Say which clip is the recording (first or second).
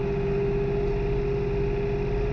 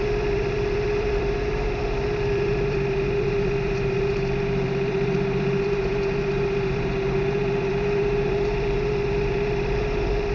first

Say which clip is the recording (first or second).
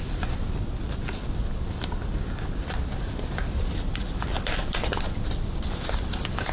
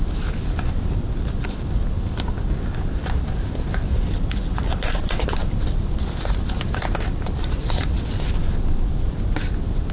first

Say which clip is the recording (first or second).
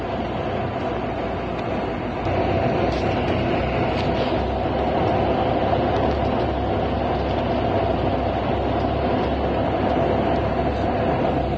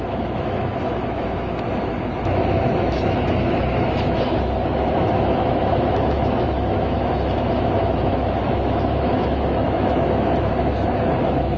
first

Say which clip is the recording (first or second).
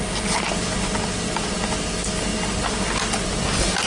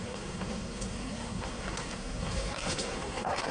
first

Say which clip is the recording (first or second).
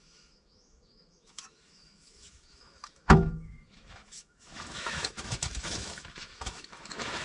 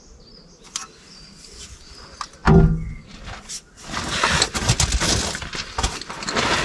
second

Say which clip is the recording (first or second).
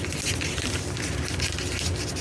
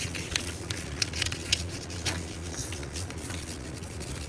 first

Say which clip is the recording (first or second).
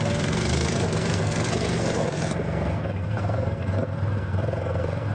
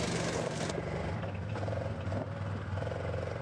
second